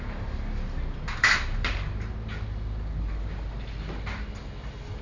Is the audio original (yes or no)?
yes